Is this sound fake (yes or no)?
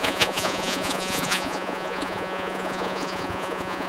yes